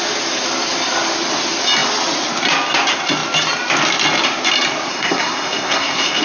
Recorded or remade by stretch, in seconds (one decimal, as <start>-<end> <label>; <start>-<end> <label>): 0.0-4.9 recorded; 4.9-6.2 remade